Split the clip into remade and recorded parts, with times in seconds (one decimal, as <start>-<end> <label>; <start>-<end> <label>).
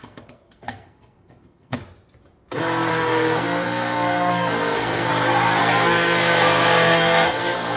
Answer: 0.0-1.8 remade; 1.8-2.9 recorded; 2.9-5.1 remade; 5.1-5.6 recorded; 5.6-7.8 remade